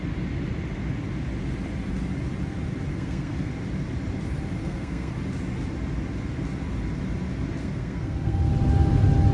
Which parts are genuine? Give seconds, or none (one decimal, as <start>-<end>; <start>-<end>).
0.0-2.9; 3.5-4.6; 5.1-7.6; 8.5-9.3